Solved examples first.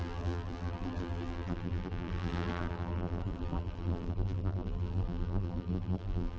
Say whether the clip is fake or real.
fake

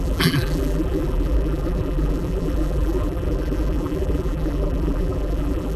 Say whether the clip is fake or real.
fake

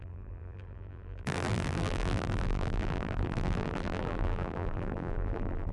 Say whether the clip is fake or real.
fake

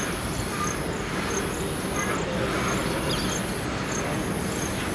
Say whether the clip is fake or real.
real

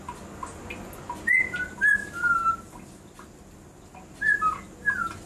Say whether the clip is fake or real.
real